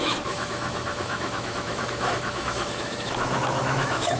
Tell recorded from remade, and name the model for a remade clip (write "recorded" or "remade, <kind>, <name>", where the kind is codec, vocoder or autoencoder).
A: remade, autoencoder, DAC-VAE